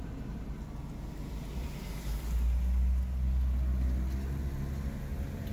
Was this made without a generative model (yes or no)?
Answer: yes